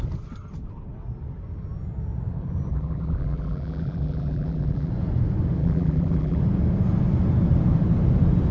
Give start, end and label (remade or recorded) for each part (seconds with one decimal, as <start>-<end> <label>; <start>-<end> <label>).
0.0-2.7 recorded; 2.7-4.9 remade; 4.9-5.6 recorded; 5.6-6.4 remade; 6.4-8.5 recorded